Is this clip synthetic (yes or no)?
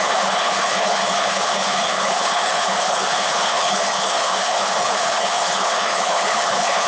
yes